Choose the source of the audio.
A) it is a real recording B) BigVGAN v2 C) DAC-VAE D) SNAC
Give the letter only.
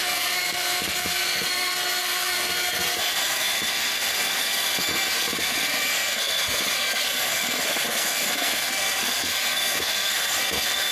D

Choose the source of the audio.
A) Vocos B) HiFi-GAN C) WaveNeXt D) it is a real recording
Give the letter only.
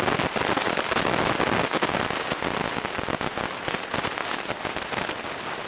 D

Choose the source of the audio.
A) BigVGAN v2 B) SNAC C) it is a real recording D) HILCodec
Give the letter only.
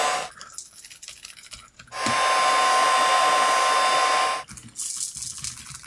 C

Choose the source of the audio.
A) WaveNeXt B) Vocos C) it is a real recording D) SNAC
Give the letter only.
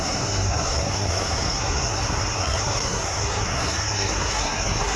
D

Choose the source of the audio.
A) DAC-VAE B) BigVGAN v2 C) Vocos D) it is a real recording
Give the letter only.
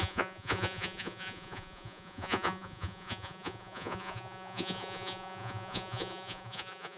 C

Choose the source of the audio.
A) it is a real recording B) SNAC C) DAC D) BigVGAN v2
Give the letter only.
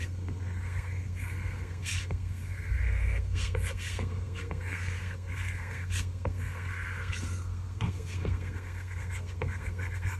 B